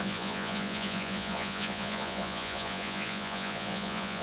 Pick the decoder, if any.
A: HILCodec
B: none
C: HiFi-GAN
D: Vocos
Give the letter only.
D